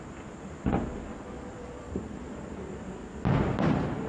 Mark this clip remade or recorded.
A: remade